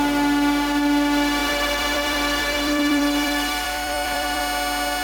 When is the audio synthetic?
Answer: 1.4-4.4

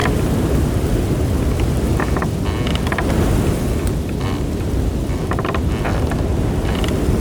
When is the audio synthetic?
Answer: none

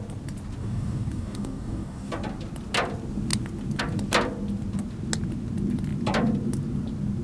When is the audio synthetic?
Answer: 0.6-2.1

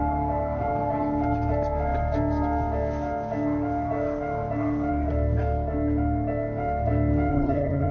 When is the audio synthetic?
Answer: 7.3-7.9